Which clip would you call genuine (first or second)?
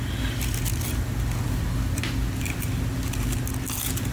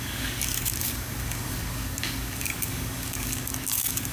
first